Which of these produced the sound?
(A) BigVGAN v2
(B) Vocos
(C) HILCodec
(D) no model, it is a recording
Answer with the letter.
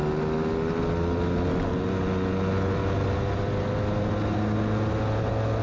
D